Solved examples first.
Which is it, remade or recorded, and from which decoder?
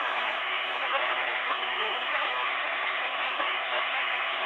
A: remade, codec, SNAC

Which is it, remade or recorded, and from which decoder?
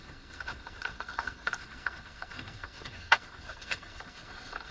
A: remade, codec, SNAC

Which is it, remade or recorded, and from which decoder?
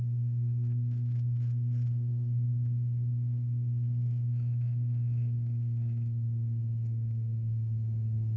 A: remade, codec, SNAC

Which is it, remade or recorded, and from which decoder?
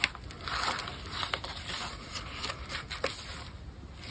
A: recorded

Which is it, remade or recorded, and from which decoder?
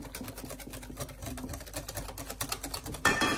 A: recorded